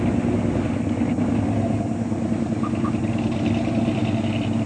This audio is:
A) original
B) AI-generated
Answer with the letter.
A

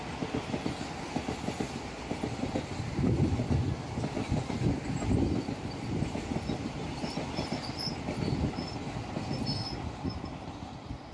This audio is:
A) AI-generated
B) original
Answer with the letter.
B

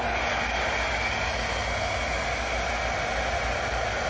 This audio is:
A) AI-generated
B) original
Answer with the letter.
B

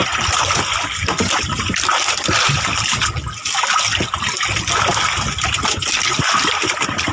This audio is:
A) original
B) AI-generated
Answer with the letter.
A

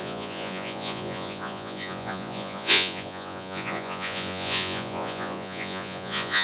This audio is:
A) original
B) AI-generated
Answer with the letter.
B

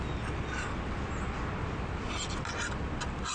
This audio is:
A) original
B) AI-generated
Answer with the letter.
A